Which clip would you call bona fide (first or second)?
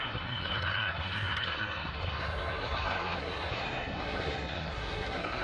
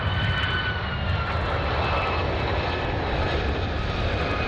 second